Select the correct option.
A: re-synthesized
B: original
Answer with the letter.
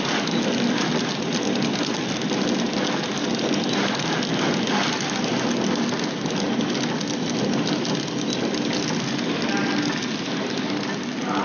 B